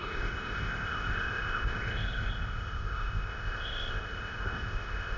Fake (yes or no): yes